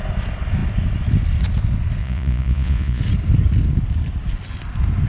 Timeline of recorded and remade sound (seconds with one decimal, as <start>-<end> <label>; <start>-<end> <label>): 0.0-2.0 recorded; 2.0-3.0 remade; 3.0-5.1 recorded